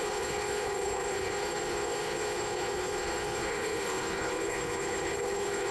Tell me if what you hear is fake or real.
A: fake